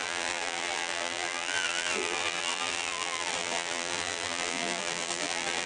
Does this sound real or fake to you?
fake